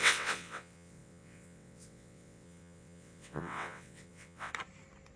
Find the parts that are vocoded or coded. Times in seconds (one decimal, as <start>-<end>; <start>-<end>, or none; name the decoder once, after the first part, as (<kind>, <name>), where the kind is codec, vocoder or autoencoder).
0.0-4.5 (vocoder, WaveNeXt)